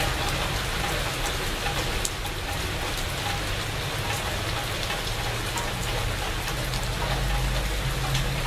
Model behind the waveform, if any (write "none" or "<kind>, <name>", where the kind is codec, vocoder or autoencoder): none